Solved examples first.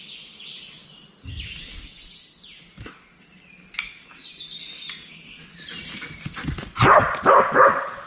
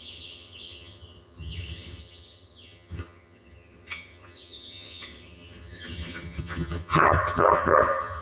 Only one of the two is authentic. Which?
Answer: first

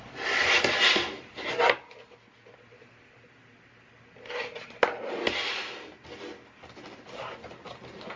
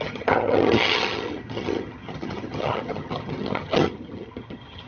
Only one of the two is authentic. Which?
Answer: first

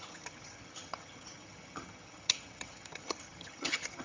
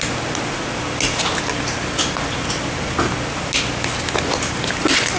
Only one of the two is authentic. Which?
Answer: second